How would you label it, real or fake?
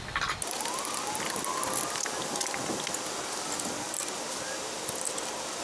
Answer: real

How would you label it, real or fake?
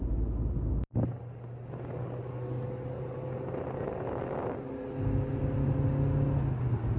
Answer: real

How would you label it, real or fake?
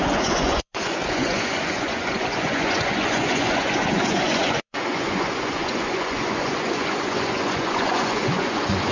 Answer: fake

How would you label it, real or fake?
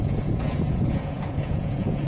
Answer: fake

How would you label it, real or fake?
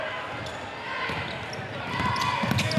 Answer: real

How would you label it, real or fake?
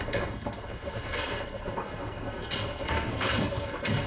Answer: fake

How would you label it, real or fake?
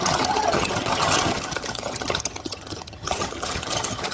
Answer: fake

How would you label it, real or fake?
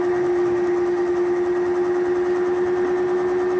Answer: real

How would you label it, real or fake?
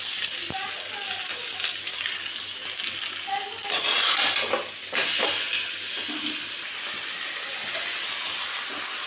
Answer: real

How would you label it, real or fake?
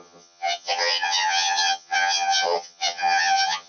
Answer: fake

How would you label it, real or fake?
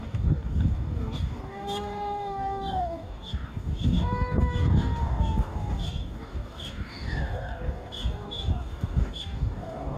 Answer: fake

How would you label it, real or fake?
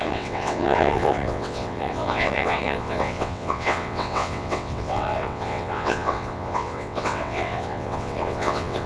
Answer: fake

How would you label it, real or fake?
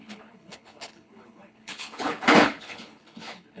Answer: fake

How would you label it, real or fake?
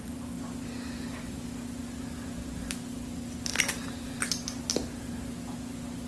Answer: real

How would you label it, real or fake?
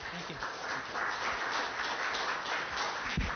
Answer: real